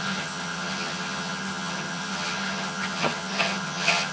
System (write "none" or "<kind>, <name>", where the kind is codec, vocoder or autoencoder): vocoder, HiFi-GAN